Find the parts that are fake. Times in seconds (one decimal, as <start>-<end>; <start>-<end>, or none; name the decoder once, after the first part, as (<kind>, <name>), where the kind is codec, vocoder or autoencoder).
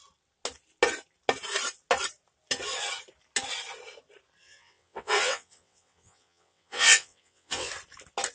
4.4-7.7 (vocoder, WaveNeXt)